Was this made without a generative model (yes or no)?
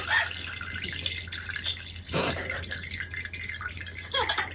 yes